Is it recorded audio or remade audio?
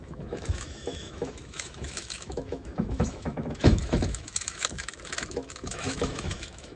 remade